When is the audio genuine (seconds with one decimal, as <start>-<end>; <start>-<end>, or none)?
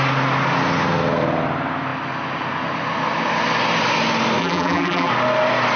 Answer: 0.0-4.4; 5.1-5.8